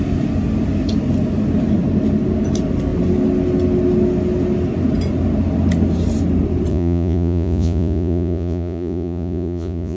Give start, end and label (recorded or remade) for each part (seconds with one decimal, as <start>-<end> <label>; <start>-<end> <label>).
0.0-6.7 recorded; 6.7-10.0 remade